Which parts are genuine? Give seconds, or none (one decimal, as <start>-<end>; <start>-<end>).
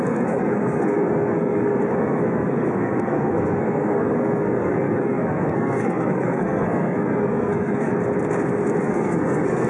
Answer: 7.9-8.8